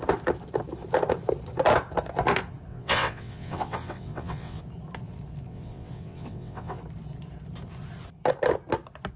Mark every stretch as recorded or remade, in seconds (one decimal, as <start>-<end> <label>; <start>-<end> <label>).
0.0-2.7 recorded; 2.7-4.6 remade; 4.6-5.5 recorded; 5.5-6.8 remade; 6.8-9.2 recorded